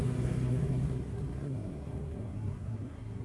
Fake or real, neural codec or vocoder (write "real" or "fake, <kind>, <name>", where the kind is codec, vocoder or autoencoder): fake, codec, SNAC